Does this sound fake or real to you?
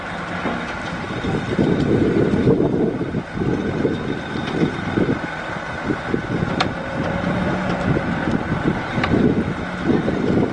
real